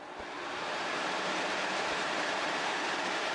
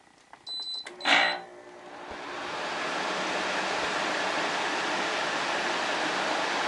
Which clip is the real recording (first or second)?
second